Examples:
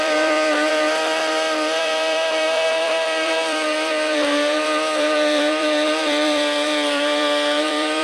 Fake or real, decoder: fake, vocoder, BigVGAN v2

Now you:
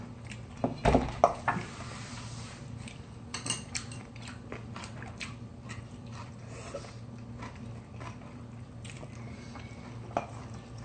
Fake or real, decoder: real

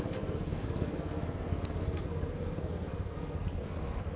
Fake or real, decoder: fake, codec, SNAC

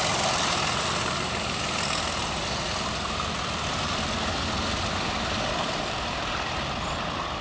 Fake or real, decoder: real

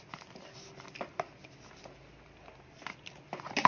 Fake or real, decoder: real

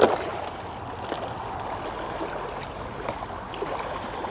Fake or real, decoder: real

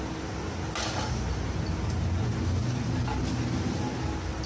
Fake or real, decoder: real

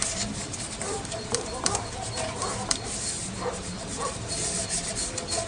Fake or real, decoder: fake, vocoder, BigVGAN v2